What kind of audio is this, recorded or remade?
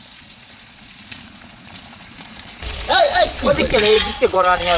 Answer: remade